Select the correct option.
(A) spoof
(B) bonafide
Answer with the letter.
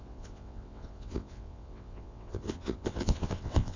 A